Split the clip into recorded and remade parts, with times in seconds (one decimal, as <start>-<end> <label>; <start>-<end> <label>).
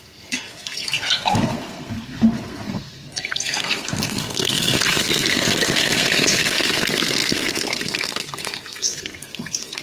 0.0-9.8 remade